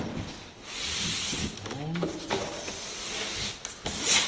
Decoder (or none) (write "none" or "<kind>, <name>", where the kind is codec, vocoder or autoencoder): none